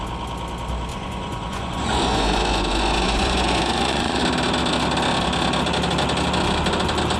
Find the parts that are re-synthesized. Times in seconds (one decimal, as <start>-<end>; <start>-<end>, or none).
0.9-4.2